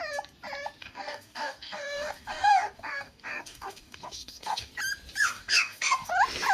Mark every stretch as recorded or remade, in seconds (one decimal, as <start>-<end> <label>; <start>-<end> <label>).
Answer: 0.0-0.8 recorded; 0.8-4.7 remade; 4.7-5.2 recorded; 5.2-6.1 remade; 6.1-6.5 recorded